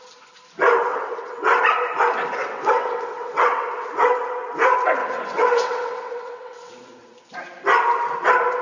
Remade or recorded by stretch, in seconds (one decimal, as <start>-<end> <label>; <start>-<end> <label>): 0.0-0.9 recorded; 0.9-1.6 remade; 1.6-2.4 recorded; 2.4-3.9 remade; 3.9-5.0 recorded; 5.0-6.7 remade; 6.7-8.6 recorded